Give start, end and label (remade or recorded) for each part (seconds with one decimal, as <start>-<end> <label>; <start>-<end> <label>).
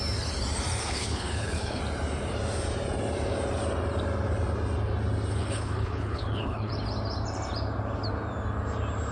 0.0-0.8 recorded; 0.8-1.8 remade; 1.8-5.3 recorded; 5.3-6.7 remade; 6.7-9.1 recorded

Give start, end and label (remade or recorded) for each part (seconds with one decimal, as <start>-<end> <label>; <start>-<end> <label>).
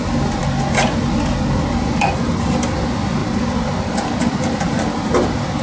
0.0-3.2 recorded; 3.2-5.6 remade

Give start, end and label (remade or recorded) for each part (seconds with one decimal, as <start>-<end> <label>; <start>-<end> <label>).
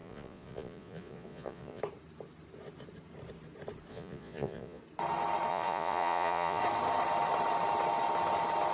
0.0-1.8 remade; 1.8-3.9 recorded; 3.9-4.8 remade; 4.8-5.5 recorded; 5.5-6.6 remade; 6.6-8.7 recorded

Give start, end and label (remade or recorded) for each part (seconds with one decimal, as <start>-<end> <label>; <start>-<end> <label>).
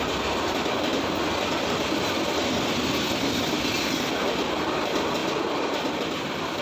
0.0-6.6 recorded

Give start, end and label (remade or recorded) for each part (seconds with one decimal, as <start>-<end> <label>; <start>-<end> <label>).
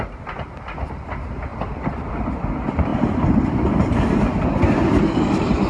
0.0-5.7 recorded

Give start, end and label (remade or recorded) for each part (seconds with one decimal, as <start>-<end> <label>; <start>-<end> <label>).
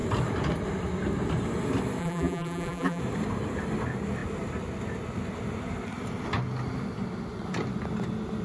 0.0-2.0 recorded; 2.0-3.0 remade; 3.0-8.4 recorded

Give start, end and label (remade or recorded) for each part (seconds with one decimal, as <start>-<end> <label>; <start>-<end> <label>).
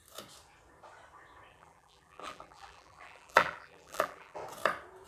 0.0-1.5 recorded; 1.5-4.4 remade; 4.4-5.1 recorded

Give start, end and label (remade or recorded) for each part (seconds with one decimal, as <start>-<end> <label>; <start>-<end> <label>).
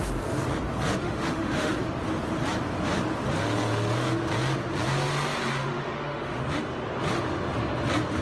0.0-1.0 recorded; 1.0-1.7 remade; 1.7-5.6 recorded; 5.6-6.4 remade; 6.4-8.2 recorded